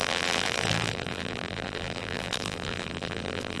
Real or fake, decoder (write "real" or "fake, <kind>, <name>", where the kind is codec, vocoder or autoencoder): fake, vocoder, BigVGAN v2